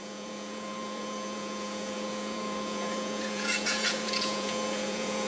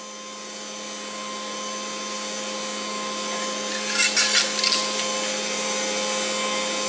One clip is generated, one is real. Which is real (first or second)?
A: second